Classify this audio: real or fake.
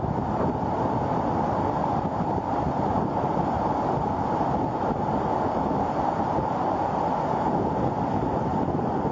real